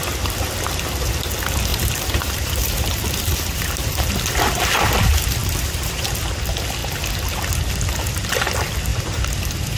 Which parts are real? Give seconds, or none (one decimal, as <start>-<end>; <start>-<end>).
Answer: 0.0-1.7; 4.1-5.4; 6.0-8.9